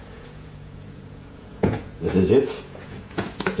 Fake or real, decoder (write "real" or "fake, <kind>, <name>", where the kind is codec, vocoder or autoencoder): fake, vocoder, Vocos